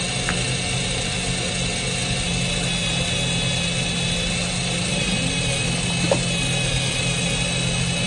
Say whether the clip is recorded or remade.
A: recorded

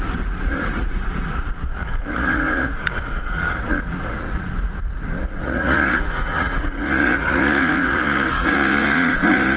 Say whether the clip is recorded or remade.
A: remade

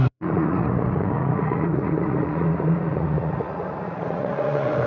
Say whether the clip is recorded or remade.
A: remade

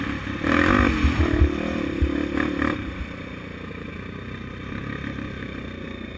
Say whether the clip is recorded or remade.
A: recorded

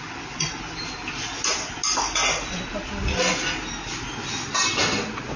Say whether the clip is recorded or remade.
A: recorded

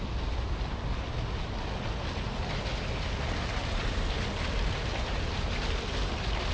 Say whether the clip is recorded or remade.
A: recorded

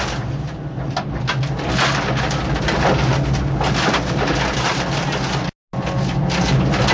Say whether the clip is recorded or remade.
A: recorded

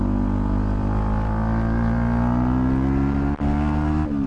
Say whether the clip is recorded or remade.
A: recorded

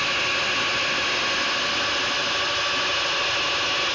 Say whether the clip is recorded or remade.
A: recorded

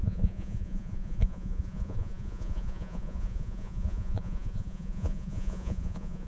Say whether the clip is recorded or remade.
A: remade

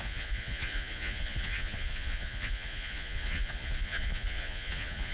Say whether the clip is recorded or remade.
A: remade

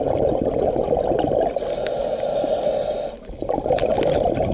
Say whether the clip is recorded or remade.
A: recorded